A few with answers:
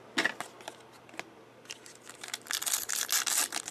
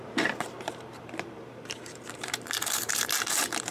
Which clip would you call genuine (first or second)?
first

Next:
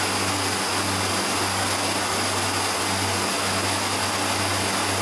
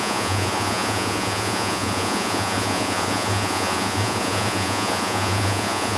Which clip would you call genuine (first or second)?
first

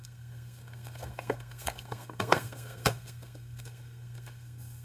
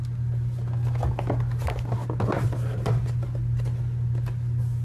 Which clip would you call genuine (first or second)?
second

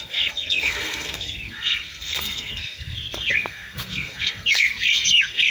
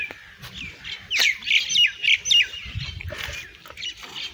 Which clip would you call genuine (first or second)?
second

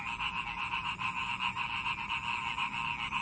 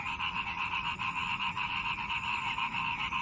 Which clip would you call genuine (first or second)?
first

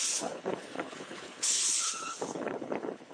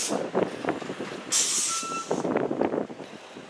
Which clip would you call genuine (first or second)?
second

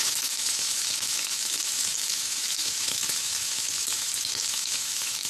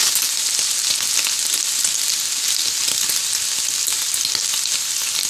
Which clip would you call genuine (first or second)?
second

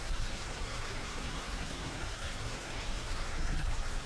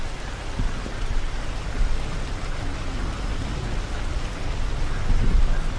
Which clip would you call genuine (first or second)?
second